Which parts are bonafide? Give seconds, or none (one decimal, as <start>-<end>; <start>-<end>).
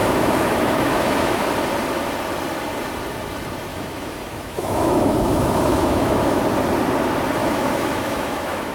1.5-3.7; 6.4-7.4